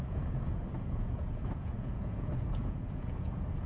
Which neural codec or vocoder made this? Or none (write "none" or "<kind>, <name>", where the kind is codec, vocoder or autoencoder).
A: vocoder, Vocos